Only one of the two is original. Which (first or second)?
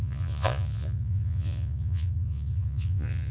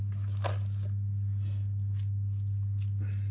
second